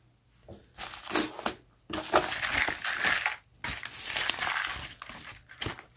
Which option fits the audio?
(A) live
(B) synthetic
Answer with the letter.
A